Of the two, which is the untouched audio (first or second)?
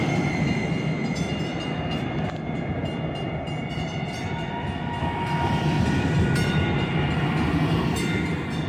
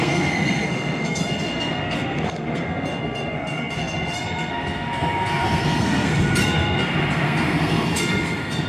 first